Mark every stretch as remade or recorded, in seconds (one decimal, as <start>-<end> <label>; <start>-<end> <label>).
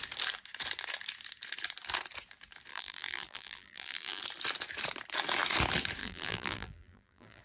0.0-2.7 recorded; 2.7-4.2 remade; 4.2-6.0 recorded; 6.0-7.4 remade